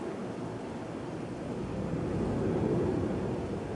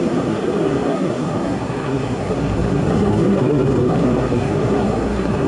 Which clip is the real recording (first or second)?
first